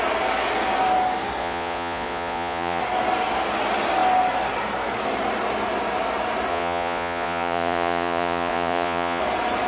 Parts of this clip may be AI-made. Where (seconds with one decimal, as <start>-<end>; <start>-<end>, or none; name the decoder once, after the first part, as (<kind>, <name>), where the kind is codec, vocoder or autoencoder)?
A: 1.4-2.8 (vocoder, Vocos); 6.5-9.2